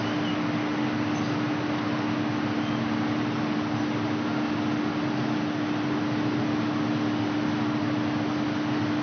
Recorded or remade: recorded